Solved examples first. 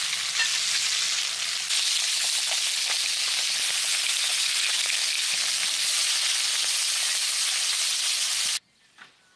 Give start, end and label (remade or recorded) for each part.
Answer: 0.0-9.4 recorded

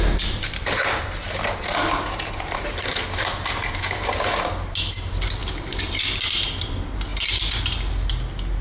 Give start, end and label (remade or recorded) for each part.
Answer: 0.0-8.6 recorded

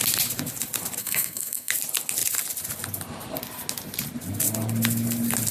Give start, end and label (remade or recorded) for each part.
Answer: 0.0-1.0 recorded; 1.0-1.7 remade; 1.7-5.5 recorded

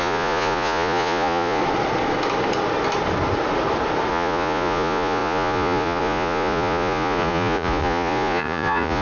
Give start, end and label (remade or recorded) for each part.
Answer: 0.0-1.6 remade; 1.6-4.1 recorded; 4.1-9.0 remade

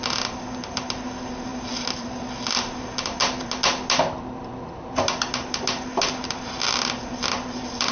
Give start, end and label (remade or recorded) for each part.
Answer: 0.0-7.9 recorded

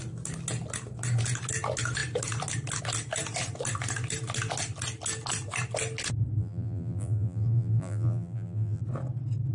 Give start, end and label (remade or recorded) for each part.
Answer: 0.0-6.4 recorded; 6.4-8.8 remade; 8.8-9.5 recorded